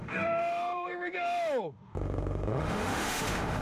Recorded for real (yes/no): no